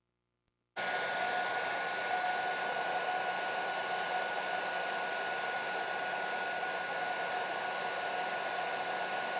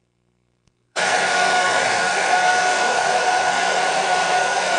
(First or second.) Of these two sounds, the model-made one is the second